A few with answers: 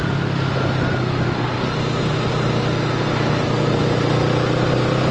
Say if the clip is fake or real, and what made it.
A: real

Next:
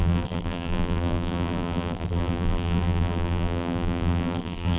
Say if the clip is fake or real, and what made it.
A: fake, vocoder, BigVGAN v2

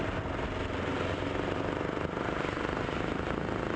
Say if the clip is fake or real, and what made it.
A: real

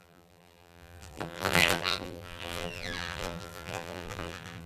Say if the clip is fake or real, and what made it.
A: fake, vocoder, BigVGAN v2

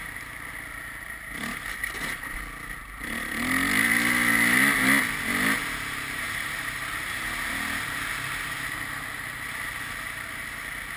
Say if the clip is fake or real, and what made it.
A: real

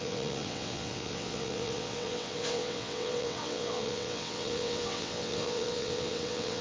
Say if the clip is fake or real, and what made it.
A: fake, vocoder, WaveNeXt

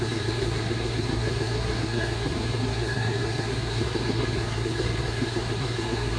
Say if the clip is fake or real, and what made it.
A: fake, codec, SNAC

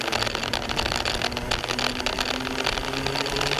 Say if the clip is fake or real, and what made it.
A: real